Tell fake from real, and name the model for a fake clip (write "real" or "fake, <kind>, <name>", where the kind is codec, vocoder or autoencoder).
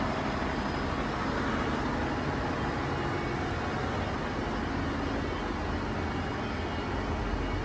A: real